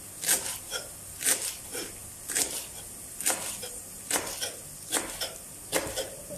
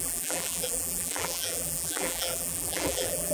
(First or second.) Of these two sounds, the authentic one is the first